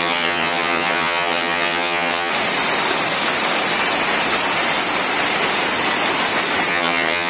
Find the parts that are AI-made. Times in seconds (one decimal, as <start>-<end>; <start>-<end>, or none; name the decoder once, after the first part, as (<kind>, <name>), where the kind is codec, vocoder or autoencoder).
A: 0.0-2.3 (vocoder, HiFi-GAN); 6.7-7.3